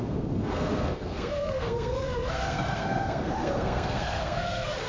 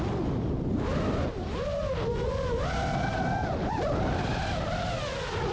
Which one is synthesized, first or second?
first